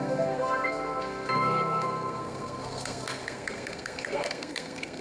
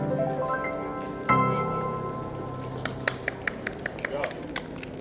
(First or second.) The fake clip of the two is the first